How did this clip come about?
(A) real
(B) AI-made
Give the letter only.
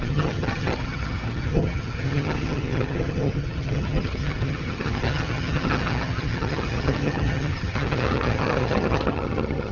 B